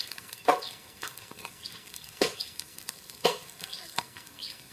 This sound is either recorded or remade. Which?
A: remade